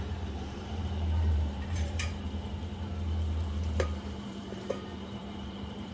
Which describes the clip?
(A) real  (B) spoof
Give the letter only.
B